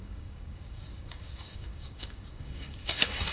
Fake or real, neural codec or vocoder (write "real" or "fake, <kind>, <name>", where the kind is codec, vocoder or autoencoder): fake, codec, DAC